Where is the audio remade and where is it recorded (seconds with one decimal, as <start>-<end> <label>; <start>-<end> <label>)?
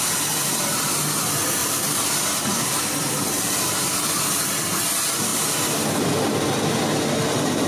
0.0-1.6 recorded; 1.6-2.7 remade; 2.7-5.3 recorded; 5.3-6.0 remade; 6.0-7.7 recorded